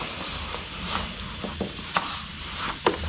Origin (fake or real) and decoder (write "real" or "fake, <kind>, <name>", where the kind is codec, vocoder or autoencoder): real